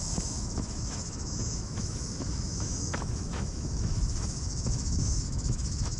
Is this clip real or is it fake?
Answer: fake